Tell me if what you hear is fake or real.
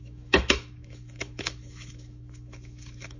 fake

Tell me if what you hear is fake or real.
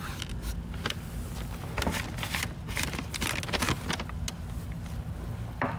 real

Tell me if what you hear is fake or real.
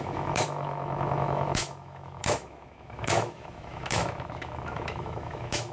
fake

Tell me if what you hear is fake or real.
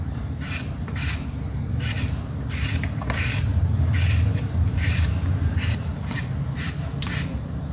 fake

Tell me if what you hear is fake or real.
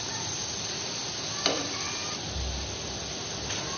real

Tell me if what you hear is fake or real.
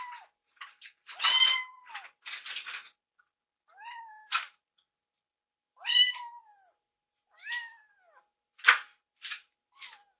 real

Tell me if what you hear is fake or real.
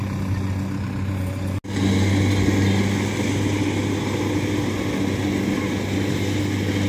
real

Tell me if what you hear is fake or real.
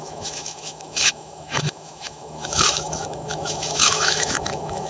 fake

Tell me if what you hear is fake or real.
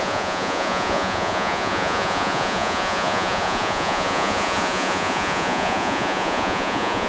fake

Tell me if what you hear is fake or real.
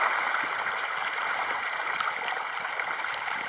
real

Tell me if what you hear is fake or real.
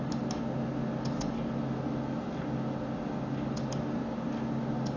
real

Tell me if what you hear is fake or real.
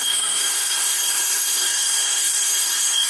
fake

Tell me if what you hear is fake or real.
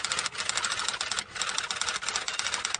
real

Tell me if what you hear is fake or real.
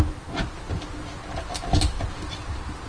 real